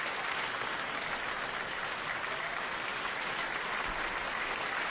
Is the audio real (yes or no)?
yes